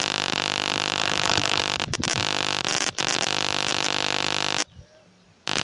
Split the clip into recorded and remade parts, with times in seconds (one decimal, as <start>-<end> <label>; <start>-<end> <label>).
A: 0.0-1.0 recorded; 1.0-1.6 remade; 1.6-5.6 recorded